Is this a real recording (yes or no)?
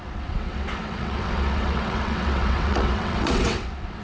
no